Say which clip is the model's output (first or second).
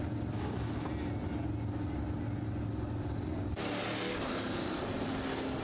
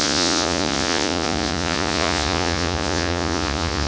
second